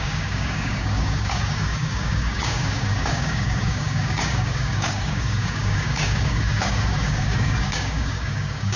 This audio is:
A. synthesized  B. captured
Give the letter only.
A